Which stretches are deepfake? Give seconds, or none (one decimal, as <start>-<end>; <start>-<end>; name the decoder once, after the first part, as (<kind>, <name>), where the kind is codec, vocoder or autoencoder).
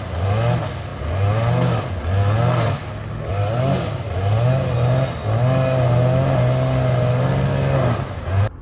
none